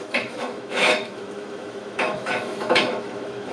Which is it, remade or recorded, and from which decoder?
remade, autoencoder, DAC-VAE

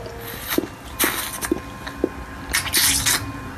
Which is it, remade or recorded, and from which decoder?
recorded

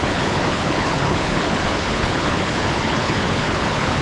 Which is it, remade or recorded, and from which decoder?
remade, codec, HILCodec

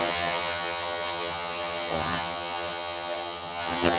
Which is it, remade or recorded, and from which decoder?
remade, vocoder, HiFi-GAN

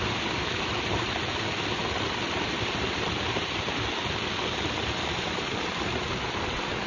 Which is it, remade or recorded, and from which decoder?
recorded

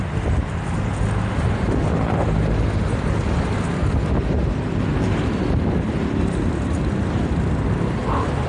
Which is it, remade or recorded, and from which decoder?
recorded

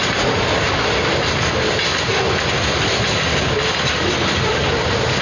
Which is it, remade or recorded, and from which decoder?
recorded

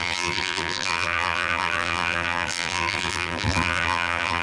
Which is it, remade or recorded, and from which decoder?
remade, vocoder, BigVGAN v2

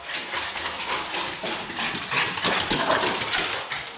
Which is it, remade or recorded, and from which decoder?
recorded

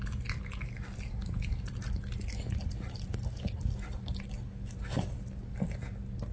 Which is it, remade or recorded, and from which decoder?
recorded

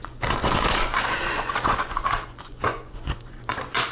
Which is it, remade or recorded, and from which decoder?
remade, vocoder, Vocos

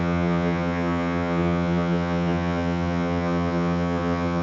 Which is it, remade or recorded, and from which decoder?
remade, vocoder, HiFi-GAN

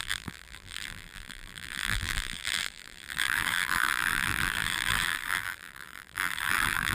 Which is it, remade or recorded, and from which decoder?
remade, vocoder, BigVGAN v2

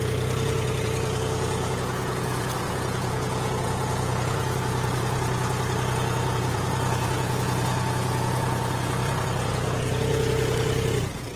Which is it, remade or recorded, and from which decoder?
remade, vocoder, Vocos